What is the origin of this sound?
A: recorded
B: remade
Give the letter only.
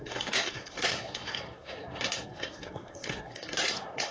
B